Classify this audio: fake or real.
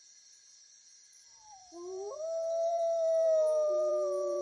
fake